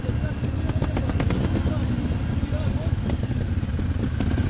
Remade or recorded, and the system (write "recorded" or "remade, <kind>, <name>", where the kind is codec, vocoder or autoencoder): recorded